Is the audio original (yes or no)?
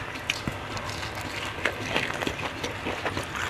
yes